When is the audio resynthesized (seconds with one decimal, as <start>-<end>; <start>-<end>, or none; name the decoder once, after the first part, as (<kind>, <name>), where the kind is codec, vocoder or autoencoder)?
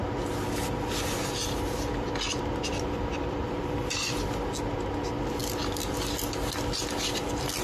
none